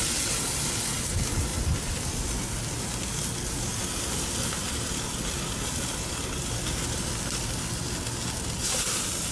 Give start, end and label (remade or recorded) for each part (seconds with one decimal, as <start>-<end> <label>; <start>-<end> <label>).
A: 0.0-9.3 recorded